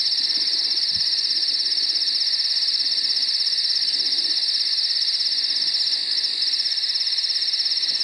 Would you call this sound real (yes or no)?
yes